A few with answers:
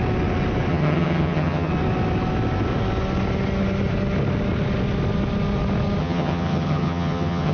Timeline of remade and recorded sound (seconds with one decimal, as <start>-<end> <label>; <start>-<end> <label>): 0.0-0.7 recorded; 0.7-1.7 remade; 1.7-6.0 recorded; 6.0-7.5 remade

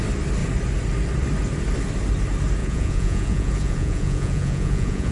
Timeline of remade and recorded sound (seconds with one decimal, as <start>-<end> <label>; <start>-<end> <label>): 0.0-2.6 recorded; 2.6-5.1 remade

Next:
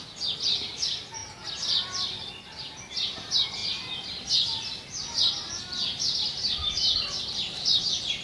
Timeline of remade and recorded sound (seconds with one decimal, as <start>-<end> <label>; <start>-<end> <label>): 0.0-8.2 recorded

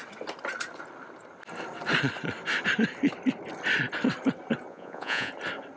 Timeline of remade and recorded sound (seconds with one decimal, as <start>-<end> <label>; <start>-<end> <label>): 0.0-4.7 recorded; 4.7-5.3 remade; 5.3-5.8 recorded